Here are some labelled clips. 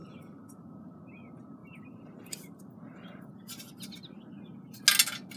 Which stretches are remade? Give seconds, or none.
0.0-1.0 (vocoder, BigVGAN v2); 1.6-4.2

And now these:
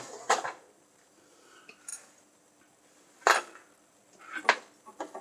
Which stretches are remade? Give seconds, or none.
none

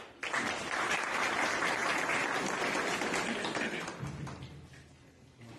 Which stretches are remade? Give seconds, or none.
none

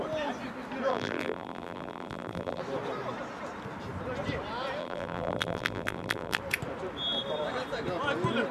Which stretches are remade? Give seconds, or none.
0.9-2.6 (vocoder, BigVGAN v2); 4.8-6.4

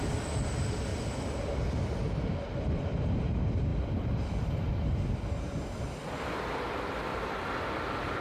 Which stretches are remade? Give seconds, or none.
3.7-5.2 (vocoder, BigVGAN v2); 7.1-7.6

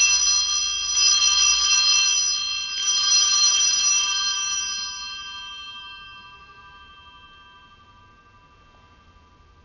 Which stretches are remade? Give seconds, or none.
2.8-8.0 (vocoder, BigVGAN v2)